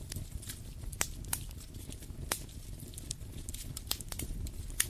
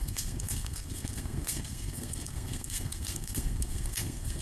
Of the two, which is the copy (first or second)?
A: second